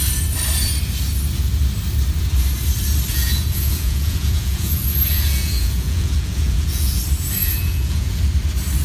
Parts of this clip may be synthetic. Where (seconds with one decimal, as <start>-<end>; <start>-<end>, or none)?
3.1-7.0; 7.4-8.2